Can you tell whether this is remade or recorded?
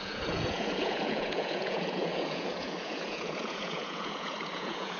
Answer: remade